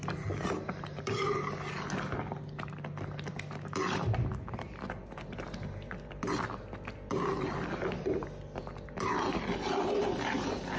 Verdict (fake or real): real